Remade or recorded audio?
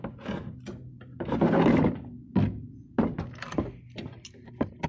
recorded